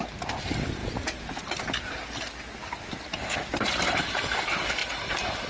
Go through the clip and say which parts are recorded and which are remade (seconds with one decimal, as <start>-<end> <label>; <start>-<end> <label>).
0.0-0.8 recorded; 0.8-1.4 remade; 1.4-5.5 recorded